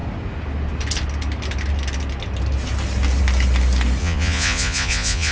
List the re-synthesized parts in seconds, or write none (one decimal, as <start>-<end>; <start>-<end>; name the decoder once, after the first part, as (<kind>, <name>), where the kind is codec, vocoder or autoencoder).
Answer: 4.0-5.3 (vocoder, Vocos)